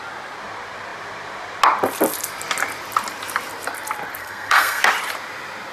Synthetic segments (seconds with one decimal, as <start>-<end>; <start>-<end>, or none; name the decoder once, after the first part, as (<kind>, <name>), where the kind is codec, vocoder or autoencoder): 4.2-4.8 (codec, SNAC)